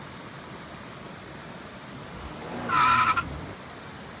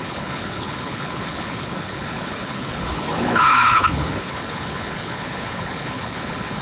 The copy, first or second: second